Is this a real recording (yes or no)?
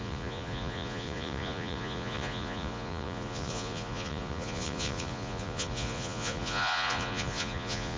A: no